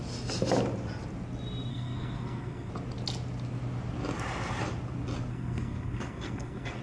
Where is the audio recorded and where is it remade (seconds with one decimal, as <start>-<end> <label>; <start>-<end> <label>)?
0.0-1.7 recorded; 1.7-2.7 remade; 2.7-5.3 recorded; 5.3-6.8 remade